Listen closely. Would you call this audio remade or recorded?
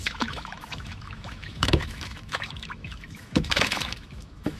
remade